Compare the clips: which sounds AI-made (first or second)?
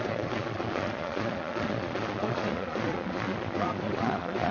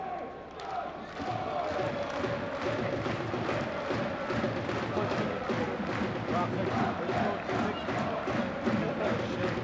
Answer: first